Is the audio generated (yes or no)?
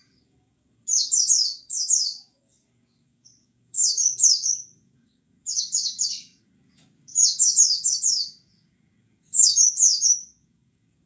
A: yes